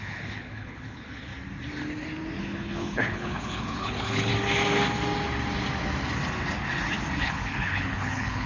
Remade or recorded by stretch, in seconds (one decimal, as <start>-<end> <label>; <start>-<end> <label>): 0.0-1.3 remade; 1.3-2.4 recorded; 2.4-4.3 remade; 4.3-7.2 recorded; 7.2-8.5 remade